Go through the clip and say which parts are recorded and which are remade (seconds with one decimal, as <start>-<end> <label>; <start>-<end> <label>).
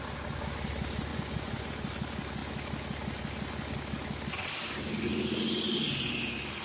0.0-1.1 recorded; 1.1-1.7 remade; 1.7-6.6 recorded